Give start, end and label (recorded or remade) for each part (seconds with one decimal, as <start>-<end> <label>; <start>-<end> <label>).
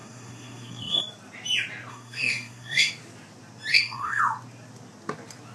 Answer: 0.0-1.0 remade; 1.0-1.9 recorded; 1.9-2.9 remade; 2.9-3.7 recorded; 3.7-4.2 remade; 4.2-5.5 recorded